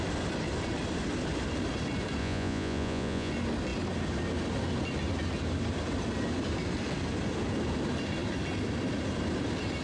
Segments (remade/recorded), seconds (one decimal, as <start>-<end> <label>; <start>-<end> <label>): 0.0-2.2 recorded; 2.2-3.3 remade; 3.3-9.8 recorded